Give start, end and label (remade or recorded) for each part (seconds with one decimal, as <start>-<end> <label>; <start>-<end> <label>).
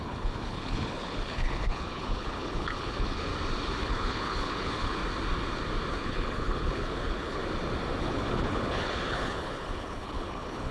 0.0-3.3 remade; 3.3-3.8 recorded; 3.8-5.0 remade; 5.0-5.9 recorded; 5.9-7.4 remade; 7.4-8.0 recorded; 8.0-10.7 remade